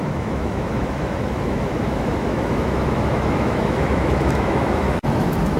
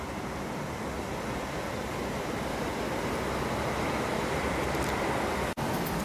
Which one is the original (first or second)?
second